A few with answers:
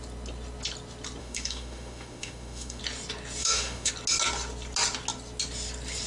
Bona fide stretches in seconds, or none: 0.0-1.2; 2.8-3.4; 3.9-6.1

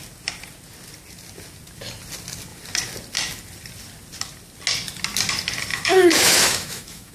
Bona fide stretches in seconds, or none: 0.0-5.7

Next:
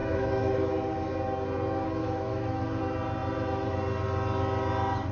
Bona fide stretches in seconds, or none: 1.1-2.0; 2.8-5.1

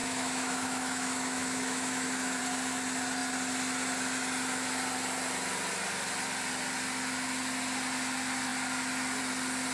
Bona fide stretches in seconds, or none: 2.4-9.7

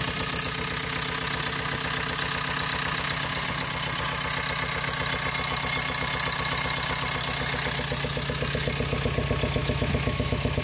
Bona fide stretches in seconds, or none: 0.0-9.6

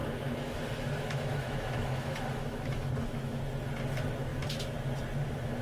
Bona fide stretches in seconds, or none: 3.4-5.6

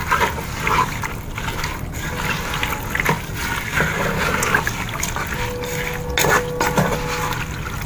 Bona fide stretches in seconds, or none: 0.0-7.9

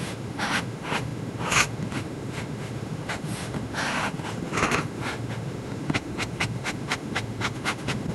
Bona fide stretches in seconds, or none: none